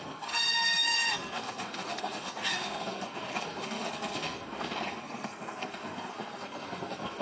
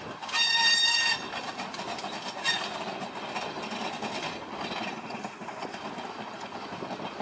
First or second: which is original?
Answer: second